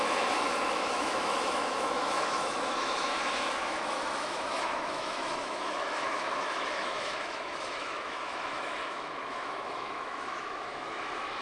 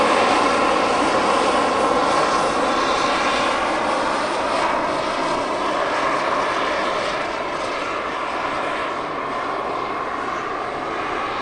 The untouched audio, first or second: second